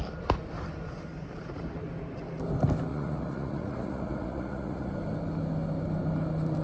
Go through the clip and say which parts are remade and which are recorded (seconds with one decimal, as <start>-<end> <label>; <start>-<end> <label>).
0.0-2.9 recorded; 2.9-4.9 remade; 4.9-6.6 recorded